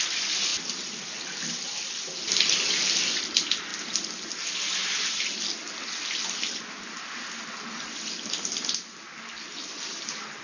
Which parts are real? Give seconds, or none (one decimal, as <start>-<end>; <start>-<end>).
0.0-10.4